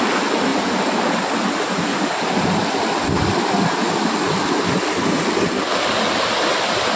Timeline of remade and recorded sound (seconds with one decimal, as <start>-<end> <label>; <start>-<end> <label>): 0.0-7.0 recorded